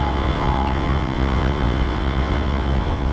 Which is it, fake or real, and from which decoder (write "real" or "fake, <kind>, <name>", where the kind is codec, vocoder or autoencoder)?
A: fake, vocoder, WaveNeXt